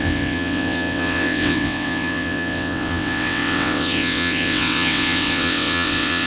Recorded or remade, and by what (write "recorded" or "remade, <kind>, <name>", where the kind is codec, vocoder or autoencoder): remade, vocoder, WaveNeXt